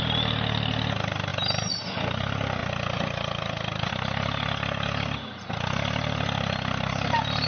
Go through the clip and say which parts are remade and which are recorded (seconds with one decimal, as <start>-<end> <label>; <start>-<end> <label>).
0.0-7.5 recorded